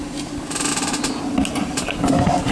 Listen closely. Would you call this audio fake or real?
real